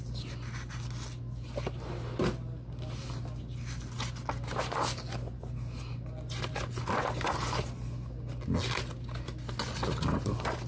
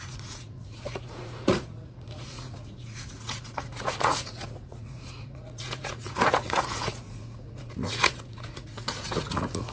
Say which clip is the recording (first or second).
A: first